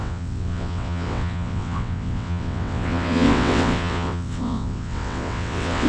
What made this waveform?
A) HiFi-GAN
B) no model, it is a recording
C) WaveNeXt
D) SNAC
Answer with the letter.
C